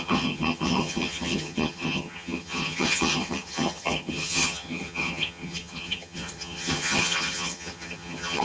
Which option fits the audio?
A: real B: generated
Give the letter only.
B